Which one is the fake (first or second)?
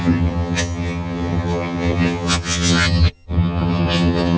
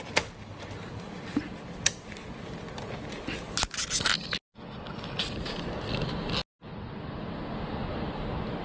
first